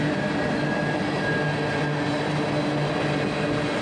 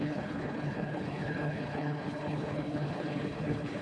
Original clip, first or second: first